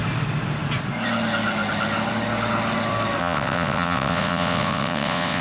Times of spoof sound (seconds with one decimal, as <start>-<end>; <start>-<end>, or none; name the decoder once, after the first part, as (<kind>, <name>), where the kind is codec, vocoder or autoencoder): 3.2-5.4 (vocoder, WaveNeXt)